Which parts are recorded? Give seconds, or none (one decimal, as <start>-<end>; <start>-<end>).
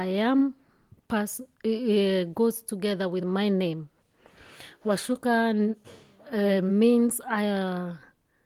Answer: 0.0-4.3; 5.2-5.7; 6.7-8.5